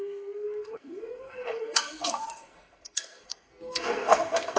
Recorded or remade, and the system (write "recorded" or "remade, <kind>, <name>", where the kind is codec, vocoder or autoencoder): remade, codec, SNAC